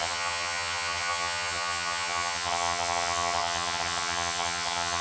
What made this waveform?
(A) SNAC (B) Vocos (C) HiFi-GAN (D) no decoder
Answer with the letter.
C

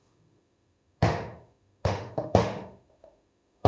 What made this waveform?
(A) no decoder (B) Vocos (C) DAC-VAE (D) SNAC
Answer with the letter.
C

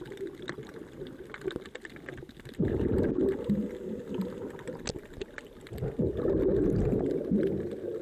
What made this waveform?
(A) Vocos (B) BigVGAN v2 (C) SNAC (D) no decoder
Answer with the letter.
D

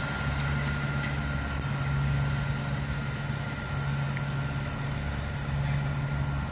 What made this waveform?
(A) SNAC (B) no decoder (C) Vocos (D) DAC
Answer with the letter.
B